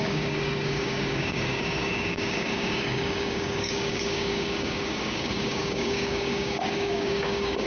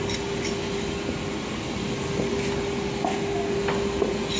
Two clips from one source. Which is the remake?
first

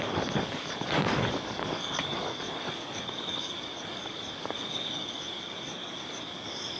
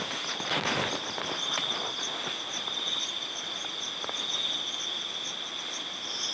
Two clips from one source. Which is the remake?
first